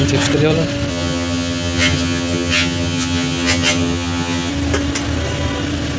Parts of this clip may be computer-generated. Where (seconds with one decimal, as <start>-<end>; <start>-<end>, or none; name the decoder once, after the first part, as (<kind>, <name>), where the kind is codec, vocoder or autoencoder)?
0.9-4.5 (vocoder, HiFi-GAN)